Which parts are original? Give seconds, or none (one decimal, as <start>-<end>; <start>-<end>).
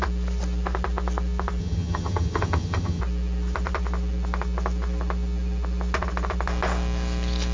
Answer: 0.0-1.6; 3.0-7.5